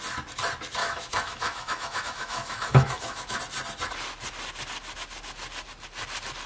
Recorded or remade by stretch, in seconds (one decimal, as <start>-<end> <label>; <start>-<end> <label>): 0.0-0.8 recorded; 0.8-3.4 remade; 3.4-6.5 recorded